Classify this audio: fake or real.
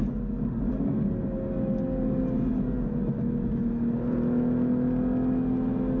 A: real